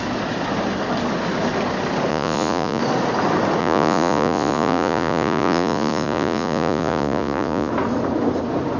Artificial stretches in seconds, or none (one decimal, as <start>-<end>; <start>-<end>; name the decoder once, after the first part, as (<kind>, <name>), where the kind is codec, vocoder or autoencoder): 2.1-2.8 (vocoder, Vocos); 3.6-7.7